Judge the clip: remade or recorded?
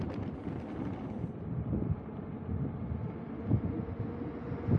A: recorded